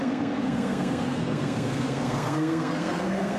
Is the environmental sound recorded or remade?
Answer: remade